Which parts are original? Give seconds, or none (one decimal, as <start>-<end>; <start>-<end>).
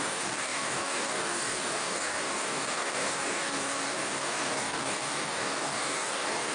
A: none